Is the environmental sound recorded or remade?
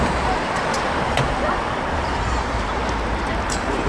remade